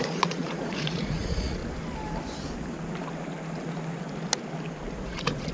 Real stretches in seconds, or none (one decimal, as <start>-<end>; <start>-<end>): 1.6-4.9